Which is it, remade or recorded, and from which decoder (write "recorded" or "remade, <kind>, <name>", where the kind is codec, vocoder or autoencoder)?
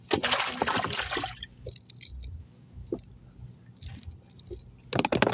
recorded